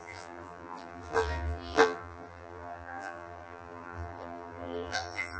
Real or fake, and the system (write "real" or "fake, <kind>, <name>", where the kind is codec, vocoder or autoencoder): fake, vocoder, BigVGAN v2